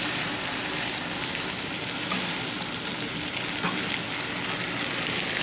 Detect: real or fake real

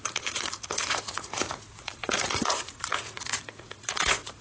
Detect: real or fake fake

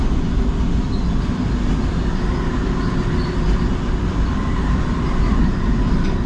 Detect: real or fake real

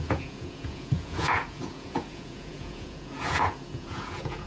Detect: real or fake fake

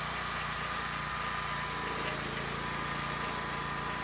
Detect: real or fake real